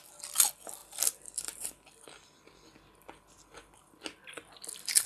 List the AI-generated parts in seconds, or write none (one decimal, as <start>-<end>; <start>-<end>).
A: 0.8-3.8